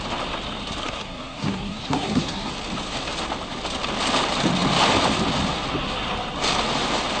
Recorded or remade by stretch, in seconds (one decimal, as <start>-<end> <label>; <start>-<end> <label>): 0.0-0.8 recorded; 0.8-2.5 remade; 2.5-7.2 recorded